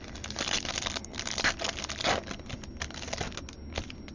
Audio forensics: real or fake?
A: real